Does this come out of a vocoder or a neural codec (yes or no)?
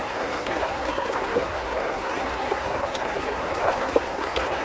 yes